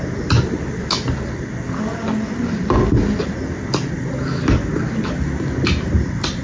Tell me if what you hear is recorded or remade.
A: recorded